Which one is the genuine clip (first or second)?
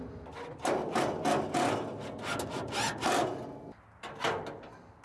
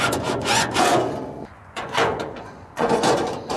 first